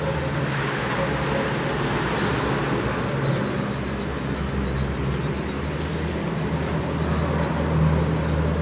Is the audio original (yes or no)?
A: yes